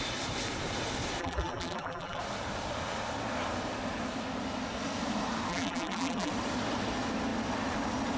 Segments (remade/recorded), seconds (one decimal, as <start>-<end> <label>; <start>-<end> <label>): 0.0-1.2 recorded; 1.2-2.2 remade; 2.2-5.5 recorded; 5.5-6.3 remade; 6.3-8.2 recorded